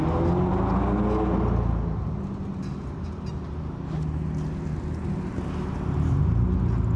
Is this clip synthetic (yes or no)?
no